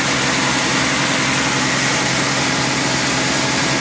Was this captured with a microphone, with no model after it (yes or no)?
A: yes